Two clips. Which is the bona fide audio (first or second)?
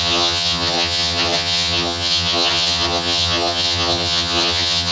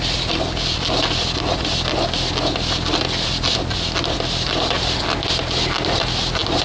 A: second